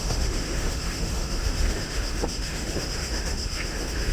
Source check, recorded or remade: remade